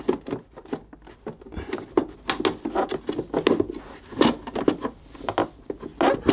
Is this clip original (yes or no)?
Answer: yes